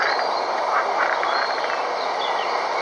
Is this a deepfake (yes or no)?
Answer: no